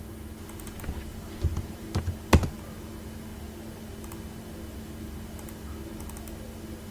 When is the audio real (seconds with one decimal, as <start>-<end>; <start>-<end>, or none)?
0.0-1.1; 1.9-6.9